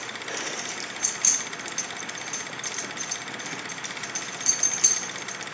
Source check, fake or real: real